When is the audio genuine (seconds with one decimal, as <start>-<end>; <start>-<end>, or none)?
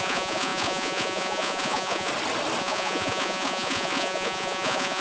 2.1-2.6